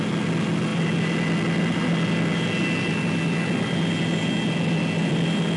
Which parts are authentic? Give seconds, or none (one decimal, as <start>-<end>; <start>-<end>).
0.0-5.6